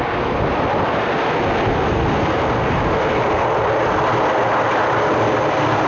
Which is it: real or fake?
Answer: real